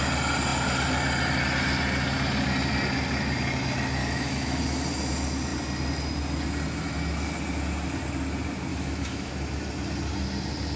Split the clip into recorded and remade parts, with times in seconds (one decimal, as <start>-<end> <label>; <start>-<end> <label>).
0.0-4.0 recorded; 4.0-4.6 remade; 4.6-8.7 recorded; 8.7-9.3 remade; 9.3-10.8 recorded